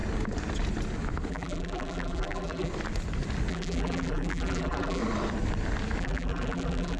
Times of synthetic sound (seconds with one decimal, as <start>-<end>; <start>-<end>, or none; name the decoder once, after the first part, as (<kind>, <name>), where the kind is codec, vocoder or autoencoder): 1.3-2.7 (vocoder, BigVGAN v2); 3.5-5.0; 6.0-7.0